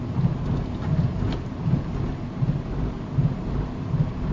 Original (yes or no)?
yes